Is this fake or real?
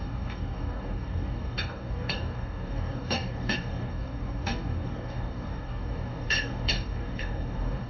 fake